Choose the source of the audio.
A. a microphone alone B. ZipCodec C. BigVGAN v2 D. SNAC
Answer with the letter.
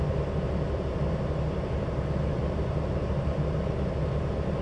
A